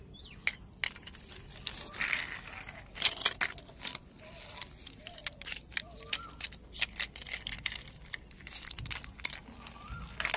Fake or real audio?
real